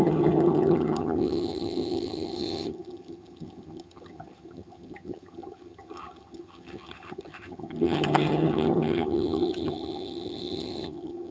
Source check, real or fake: fake